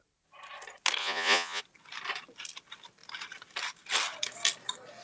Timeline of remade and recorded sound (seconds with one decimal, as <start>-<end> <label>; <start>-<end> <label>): 0.0-1.0 recorded; 1.0-1.6 remade; 1.6-5.0 recorded